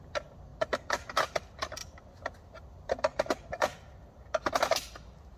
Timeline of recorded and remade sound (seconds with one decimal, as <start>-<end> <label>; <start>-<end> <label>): 0.0-5.4 recorded

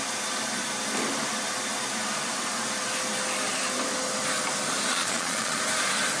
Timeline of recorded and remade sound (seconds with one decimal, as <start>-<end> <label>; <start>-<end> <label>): 0.0-4.9 recorded; 4.9-5.6 remade; 5.6-6.2 recorded

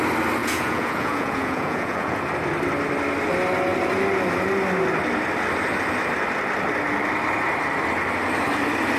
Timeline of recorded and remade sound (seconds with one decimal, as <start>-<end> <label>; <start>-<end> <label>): 0.0-0.4 recorded; 0.4-2.2 remade; 2.2-9.0 recorded

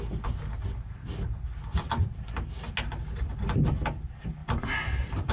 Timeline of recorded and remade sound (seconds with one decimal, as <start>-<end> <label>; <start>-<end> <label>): 0.0-5.3 recorded

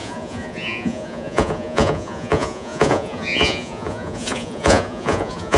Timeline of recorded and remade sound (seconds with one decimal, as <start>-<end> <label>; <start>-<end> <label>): 0.0-5.6 remade

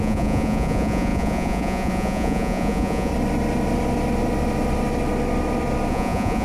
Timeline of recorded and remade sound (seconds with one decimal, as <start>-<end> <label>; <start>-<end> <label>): 0.0-3.1 remade; 3.1-5.9 recorded; 5.9-6.4 remade

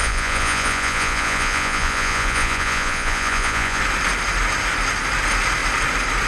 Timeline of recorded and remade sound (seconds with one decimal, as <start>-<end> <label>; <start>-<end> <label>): 0.0-3.8 remade; 3.8-6.3 recorded